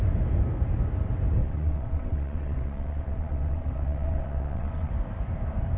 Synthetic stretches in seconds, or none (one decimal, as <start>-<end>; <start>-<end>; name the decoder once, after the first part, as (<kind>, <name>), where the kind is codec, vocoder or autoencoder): 1.4-4.9 (vocoder, WaveNeXt)